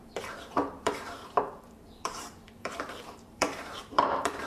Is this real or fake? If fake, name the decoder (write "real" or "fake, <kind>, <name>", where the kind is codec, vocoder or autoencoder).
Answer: fake, vocoder, BigVGAN v2